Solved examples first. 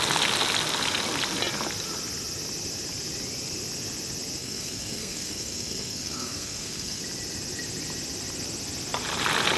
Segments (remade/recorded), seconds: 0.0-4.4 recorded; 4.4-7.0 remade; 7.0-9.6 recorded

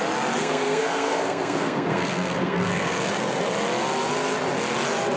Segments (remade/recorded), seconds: 0.0-0.4 recorded; 0.4-3.5 remade; 3.5-5.2 recorded

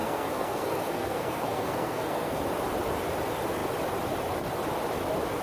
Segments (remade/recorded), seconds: 0.0-2.4 remade; 2.4-5.4 recorded

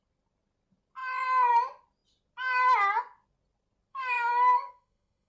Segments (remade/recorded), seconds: 0.0-3.9 recorded; 3.9-5.3 remade

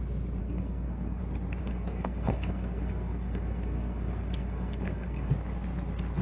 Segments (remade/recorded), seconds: 0.0-0.4 recorded; 0.4-1.2 remade; 1.2-1.6 recorded; 1.6-5.3 remade; 5.3-6.2 recorded

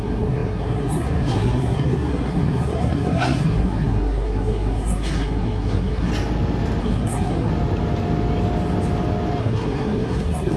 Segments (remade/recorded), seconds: 0.0-6.1 remade; 6.1-6.8 recorded; 6.8-7.5 remade; 7.5-9.4 recorded; 9.4-10.6 remade